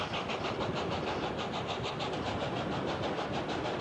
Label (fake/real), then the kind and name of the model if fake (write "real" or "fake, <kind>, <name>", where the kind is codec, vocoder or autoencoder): real